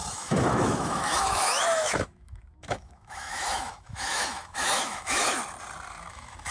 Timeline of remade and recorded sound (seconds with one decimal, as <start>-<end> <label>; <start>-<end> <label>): 0.0-5.4 remade; 5.4-6.1 recorded; 6.1-6.5 remade